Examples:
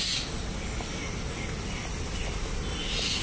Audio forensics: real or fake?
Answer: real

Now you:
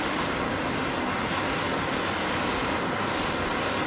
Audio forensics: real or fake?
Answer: real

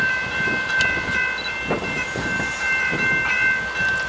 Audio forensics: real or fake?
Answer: real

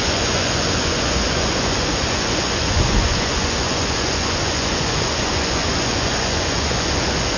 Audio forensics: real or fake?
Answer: fake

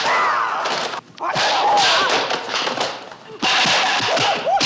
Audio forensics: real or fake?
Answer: real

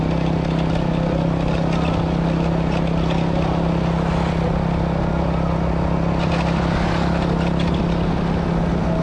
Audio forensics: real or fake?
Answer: real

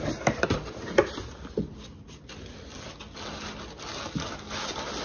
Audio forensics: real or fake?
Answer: real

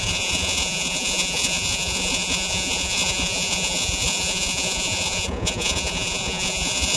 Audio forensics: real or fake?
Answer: fake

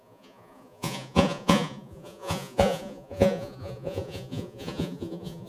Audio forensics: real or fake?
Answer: fake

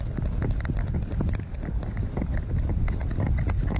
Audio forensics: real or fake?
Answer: real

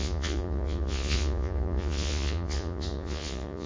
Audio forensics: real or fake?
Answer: fake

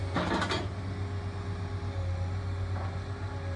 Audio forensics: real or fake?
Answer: real